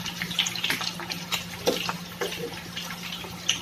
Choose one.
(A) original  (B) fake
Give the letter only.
A